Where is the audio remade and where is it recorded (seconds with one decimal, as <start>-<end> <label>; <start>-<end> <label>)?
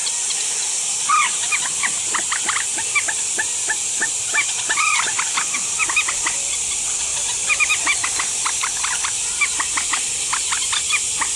0.0-11.4 recorded